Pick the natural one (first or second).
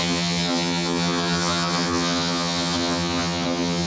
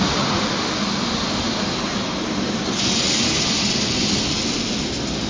second